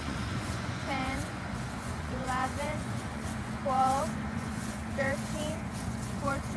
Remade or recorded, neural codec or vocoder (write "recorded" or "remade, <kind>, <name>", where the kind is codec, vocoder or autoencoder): remade, vocoder, Vocos